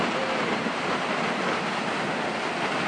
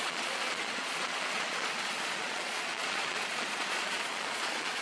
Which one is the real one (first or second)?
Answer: first